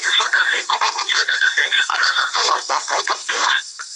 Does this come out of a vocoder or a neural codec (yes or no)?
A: yes